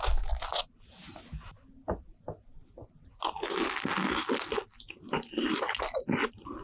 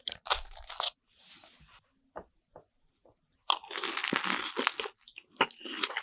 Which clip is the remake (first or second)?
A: second